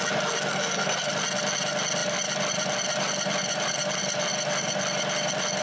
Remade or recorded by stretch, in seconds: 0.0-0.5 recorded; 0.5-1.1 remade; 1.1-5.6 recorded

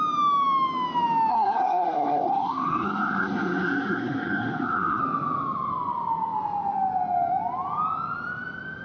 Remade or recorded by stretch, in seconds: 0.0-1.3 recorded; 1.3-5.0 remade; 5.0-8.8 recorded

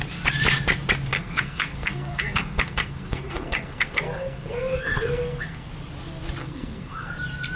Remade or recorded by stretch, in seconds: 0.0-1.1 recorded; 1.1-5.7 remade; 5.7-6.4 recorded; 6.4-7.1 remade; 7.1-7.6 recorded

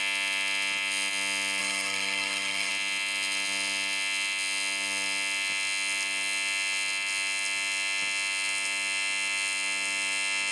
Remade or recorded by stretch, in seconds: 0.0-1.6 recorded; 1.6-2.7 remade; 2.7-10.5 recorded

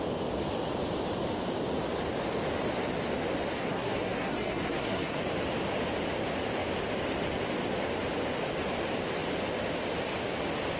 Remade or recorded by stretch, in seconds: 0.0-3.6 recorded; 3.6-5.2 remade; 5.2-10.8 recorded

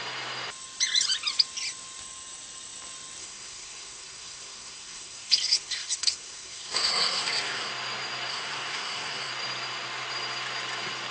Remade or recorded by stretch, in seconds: 0.0-3.2 recorded; 3.2-7.7 remade; 7.7-8.3 recorded; 8.3-9.3 remade; 9.3-11.1 recorded